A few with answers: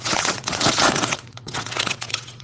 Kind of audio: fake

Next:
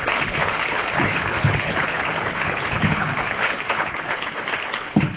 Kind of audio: fake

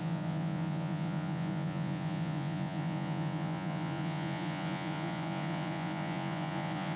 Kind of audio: fake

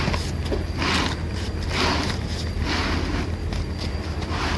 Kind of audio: real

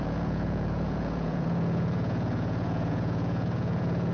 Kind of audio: fake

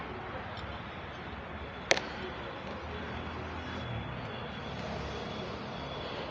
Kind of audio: real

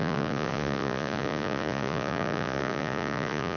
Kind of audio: fake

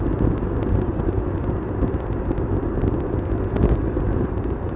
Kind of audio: real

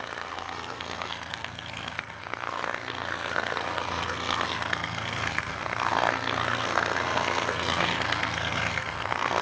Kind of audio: fake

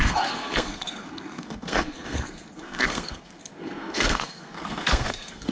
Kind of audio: fake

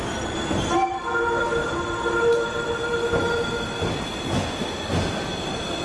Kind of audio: real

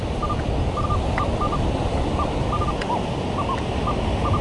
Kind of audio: real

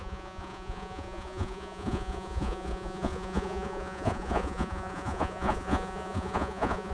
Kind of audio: fake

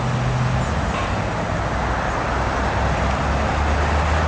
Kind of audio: real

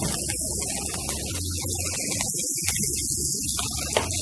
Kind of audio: real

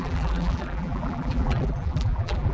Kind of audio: fake